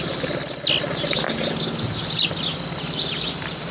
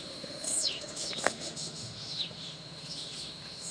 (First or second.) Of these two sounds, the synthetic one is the second